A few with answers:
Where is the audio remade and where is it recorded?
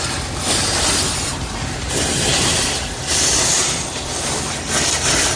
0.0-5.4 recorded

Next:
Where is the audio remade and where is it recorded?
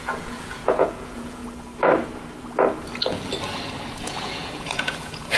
0.0-1.4 remade; 1.4-3.9 recorded; 3.9-5.4 remade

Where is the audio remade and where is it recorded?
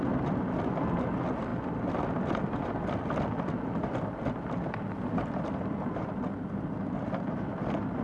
0.0-8.0 recorded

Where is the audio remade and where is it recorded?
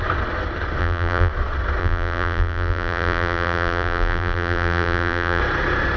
0.0-0.8 recorded; 0.8-1.3 remade; 1.3-1.8 recorded; 1.8-5.4 remade; 5.4-6.0 recorded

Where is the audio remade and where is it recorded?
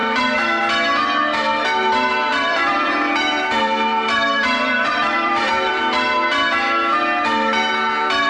0.0-0.6 remade; 0.6-2.3 recorded; 2.3-5.8 remade; 5.8-8.3 recorded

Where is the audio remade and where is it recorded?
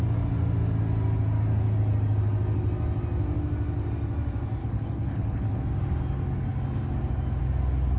0.0-4.6 recorded; 4.6-5.6 remade; 5.6-8.0 recorded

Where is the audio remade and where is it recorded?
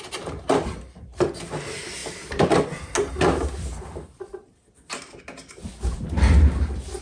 0.0-7.0 recorded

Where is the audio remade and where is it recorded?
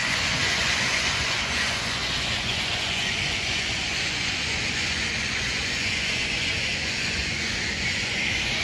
0.0-8.6 remade